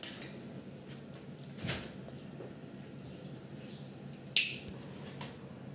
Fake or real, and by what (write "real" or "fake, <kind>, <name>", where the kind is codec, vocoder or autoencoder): real